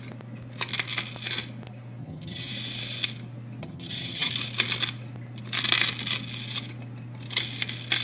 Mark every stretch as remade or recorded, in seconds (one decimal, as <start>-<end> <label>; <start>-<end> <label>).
0.0-2.0 recorded; 2.0-2.5 remade; 2.5-3.6 recorded; 3.6-4.3 remade; 4.3-8.0 recorded